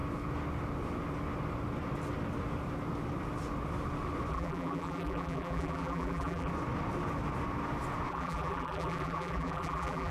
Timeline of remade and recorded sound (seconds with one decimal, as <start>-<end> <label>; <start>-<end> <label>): 0.0-4.3 recorded; 4.3-6.5 remade; 6.5-8.1 recorded; 8.1-10.1 remade